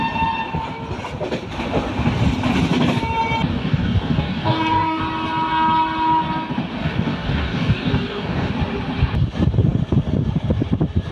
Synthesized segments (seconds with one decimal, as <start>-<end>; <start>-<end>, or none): 3.5-5.0; 6.8-8.5